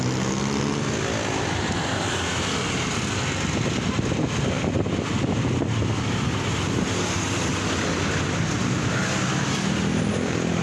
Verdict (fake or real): real